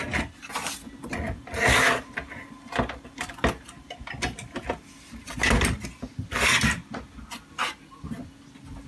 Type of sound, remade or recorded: recorded